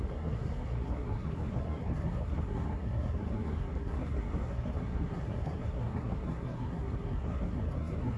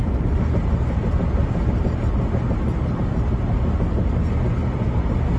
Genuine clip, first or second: second